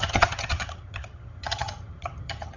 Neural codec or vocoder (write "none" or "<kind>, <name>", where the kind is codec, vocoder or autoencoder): vocoder, HiFi-GAN